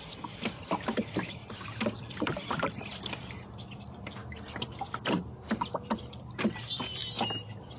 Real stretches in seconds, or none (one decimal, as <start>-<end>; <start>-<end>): 1.4-2.0; 4.2-6.6; 7.0-7.8

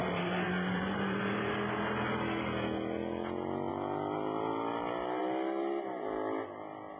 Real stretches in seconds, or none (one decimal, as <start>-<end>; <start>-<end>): 1.5-7.0

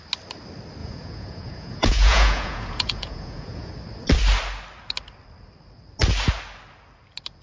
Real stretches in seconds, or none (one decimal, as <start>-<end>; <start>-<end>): 0.0-0.8; 3.7-7.4